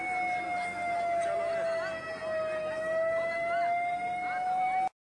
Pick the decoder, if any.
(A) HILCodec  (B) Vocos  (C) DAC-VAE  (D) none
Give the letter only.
D